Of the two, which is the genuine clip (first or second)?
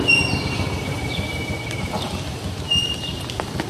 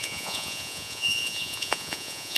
first